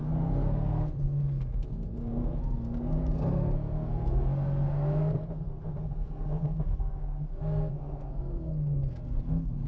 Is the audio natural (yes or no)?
no